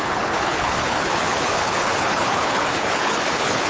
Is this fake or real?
fake